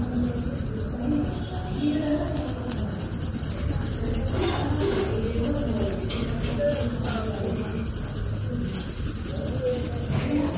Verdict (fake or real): real